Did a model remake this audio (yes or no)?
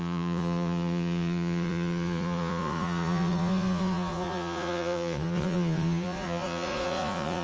yes